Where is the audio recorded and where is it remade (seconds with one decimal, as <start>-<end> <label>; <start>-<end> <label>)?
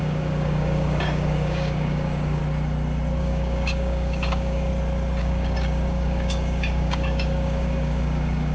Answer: 0.0-2.4 remade; 2.4-3.2 recorded; 3.2-4.7 remade; 4.7-5.2 recorded; 5.2-8.5 remade